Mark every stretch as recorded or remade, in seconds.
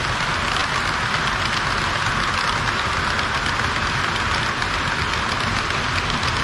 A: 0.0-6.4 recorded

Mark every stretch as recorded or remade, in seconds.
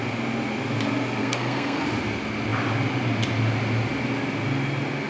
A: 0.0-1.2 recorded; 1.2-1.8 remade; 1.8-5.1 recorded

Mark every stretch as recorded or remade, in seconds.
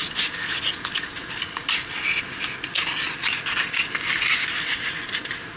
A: 0.0-5.6 recorded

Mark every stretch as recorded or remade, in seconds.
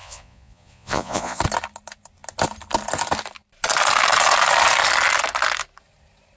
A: 0.0-1.4 remade; 1.4-6.4 recorded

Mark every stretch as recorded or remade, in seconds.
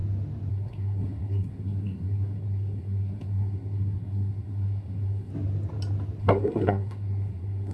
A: 0.0-0.5 recorded; 0.5-5.3 remade; 5.3-6.2 recorded; 6.2-7.7 remade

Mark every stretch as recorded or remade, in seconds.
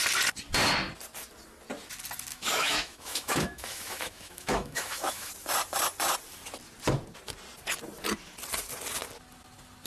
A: 0.0-2.3 recorded; 2.3-5.3 remade; 5.3-9.9 recorded